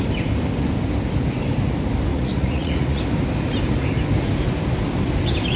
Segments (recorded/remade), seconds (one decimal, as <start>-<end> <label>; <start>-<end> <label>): 0.0-2.1 recorded; 2.1-3.0 remade; 3.0-5.6 recorded